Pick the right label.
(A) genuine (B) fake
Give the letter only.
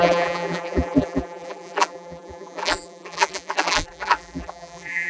B